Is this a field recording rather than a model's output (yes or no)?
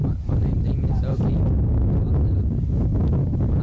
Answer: yes